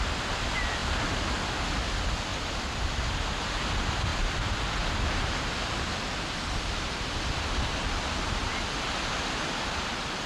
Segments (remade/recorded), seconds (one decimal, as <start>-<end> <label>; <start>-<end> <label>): 0.0-2.3 recorded; 2.3-3.0 remade; 3.0-4.1 recorded; 4.1-8.8 remade; 8.8-10.3 recorded